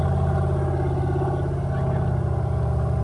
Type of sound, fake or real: real